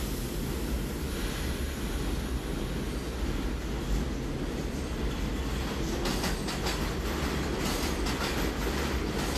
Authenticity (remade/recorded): recorded